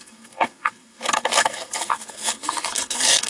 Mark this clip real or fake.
fake